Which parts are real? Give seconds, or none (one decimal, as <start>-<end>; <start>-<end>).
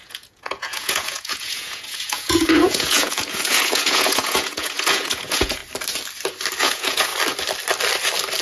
5.6-6.6; 7.1-8.4